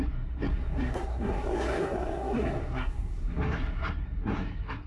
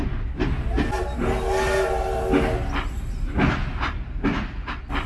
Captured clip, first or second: second